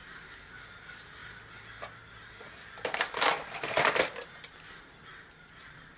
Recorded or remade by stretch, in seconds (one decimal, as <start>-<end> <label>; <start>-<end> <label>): 0.0-6.0 recorded